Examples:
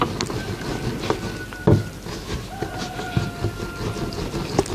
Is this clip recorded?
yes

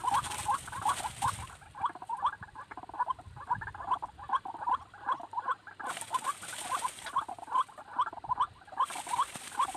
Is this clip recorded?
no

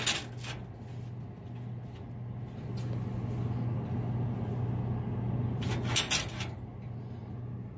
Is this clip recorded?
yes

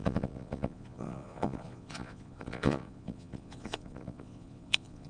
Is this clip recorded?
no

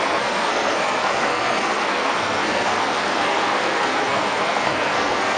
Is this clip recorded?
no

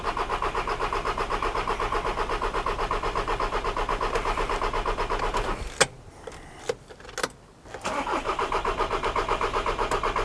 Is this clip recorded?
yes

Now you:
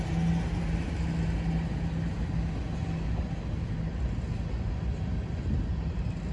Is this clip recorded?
yes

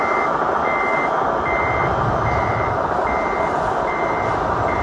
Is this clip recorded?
yes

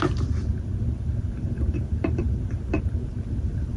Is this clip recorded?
no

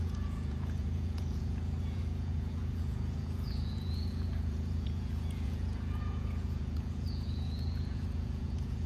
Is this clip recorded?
no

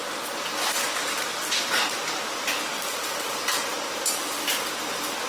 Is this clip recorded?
no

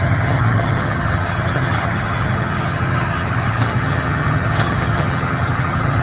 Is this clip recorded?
no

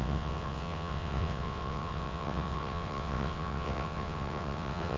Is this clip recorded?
no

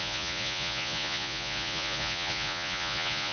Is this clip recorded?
no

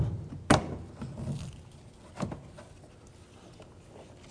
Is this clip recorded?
yes